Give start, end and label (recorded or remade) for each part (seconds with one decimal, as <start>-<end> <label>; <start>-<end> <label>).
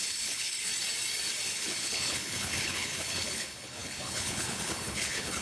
0.0-0.7 remade; 0.7-1.5 recorded; 1.5-5.4 remade